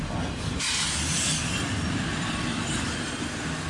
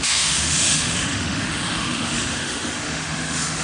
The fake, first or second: second